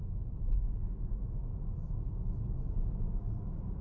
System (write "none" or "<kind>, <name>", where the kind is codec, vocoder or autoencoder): none